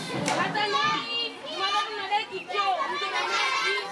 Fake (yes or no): no